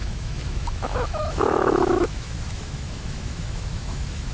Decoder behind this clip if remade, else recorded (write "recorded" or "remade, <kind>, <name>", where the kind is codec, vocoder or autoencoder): remade, autoencoder, DAC-VAE